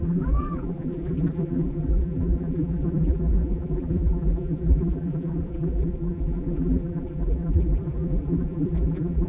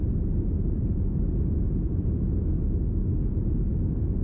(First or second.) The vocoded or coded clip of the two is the first